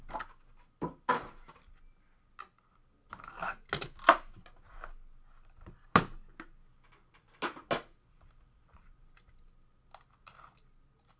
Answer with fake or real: real